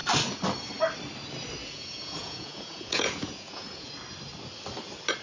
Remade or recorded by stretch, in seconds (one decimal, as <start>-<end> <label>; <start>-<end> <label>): 0.0-1.6 recorded; 1.6-3.9 remade; 3.9-5.2 recorded